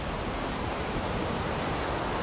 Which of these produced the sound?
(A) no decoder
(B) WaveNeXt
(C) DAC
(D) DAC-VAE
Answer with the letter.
A